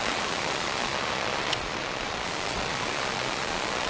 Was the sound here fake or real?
fake